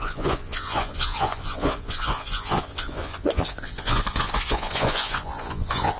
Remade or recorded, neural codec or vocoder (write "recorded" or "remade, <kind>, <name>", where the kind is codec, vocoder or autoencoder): remade, vocoder, Vocos